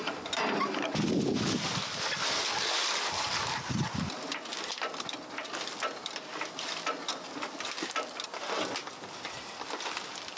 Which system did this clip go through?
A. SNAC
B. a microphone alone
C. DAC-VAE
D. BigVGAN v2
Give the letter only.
B